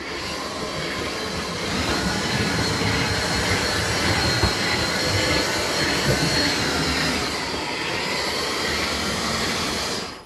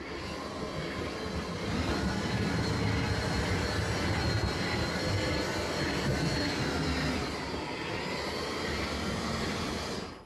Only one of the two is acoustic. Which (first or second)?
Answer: second